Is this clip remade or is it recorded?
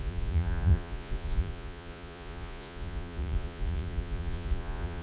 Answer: remade